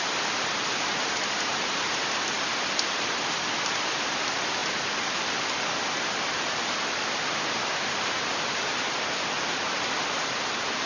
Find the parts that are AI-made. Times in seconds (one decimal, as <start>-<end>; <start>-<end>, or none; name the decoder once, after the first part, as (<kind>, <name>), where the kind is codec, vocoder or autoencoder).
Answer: 0.0-4.6 (vocoder, BigVGAN v2); 6.0-10.9